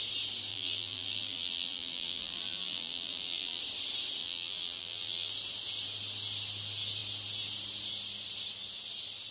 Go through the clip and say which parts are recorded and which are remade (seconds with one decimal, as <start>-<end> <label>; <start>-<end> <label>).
0.0-0.5 recorded; 0.5-3.6 remade; 3.6-4.2 recorded; 4.2-5.3 remade; 5.3-9.3 recorded